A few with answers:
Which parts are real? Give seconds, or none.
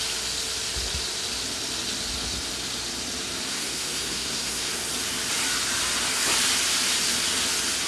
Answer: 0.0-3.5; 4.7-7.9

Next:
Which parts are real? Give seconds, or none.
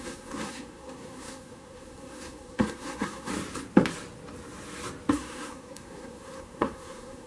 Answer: 3.3-5.1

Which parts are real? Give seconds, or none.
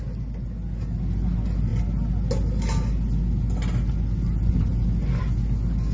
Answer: 0.0-5.9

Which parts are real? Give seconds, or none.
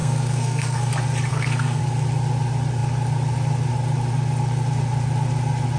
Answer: 0.9-1.3; 1.8-5.8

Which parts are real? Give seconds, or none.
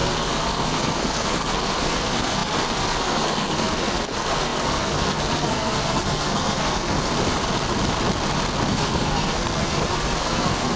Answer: 7.1-8.7